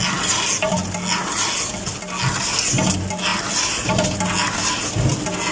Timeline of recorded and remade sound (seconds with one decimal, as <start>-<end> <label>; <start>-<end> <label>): 0.0-5.5 recorded